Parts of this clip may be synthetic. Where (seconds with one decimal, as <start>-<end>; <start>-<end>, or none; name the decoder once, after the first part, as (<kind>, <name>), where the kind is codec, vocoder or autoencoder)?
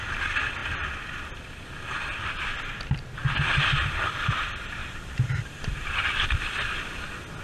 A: 4.8-6.4 (vocoder, BigVGAN v2)